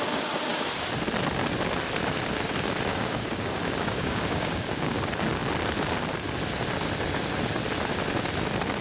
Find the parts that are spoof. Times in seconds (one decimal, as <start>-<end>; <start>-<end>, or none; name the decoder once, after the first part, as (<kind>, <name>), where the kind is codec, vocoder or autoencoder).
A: 2.9-5.0 (codec, DAC)